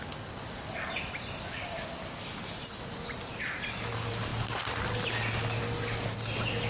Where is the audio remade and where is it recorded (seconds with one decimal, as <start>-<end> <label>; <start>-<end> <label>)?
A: 0.0-6.7 recorded